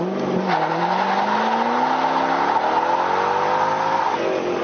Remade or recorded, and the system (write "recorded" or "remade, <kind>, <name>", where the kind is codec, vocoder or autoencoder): recorded